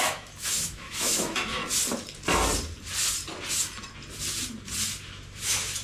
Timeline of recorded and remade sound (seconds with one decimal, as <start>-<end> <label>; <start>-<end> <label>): 0.0-1.6 remade; 1.6-5.1 recorded; 5.1-5.8 remade